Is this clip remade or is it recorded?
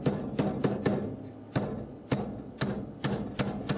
recorded